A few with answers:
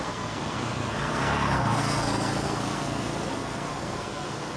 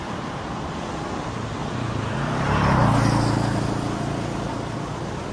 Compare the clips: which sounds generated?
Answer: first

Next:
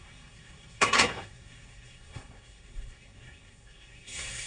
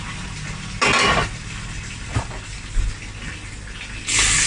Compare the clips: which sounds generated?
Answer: first